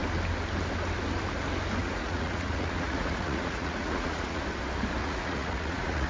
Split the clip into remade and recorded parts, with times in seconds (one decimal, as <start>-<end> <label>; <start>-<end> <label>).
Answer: 0.0-1.8 recorded; 1.8-4.4 remade; 4.4-5.0 recorded; 5.0-6.1 remade